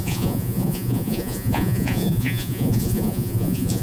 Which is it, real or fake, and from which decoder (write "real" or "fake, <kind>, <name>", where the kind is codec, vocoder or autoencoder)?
fake, vocoder, Vocos